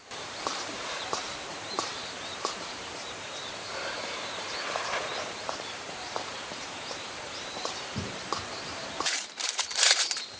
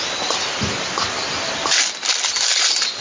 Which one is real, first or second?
second